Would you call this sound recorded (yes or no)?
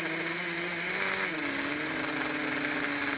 yes